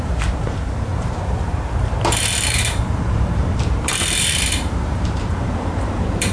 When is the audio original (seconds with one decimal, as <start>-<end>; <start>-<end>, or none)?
none